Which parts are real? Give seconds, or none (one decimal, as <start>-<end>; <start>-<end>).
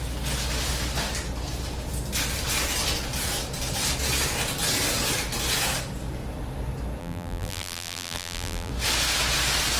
0.0-7.0; 8.7-9.8